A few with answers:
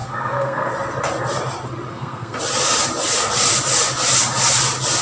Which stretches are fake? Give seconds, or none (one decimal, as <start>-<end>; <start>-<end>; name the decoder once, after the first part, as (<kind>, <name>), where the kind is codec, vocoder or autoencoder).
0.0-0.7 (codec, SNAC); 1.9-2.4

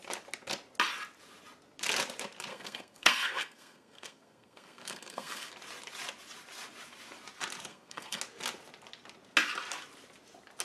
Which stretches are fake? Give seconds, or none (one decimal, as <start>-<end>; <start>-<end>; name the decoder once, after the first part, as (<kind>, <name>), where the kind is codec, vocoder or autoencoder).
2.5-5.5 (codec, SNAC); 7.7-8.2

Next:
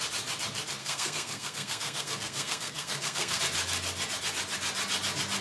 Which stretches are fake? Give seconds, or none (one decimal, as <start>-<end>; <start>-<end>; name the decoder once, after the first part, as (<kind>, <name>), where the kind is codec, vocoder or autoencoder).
0.8-3.4 (codec, SNAC)